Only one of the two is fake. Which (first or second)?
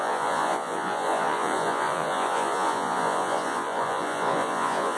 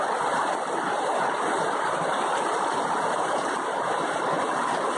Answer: first